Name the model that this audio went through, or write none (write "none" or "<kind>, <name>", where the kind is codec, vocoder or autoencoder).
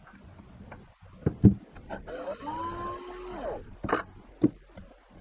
none